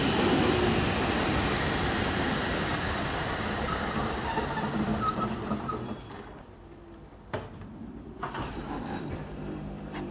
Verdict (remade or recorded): remade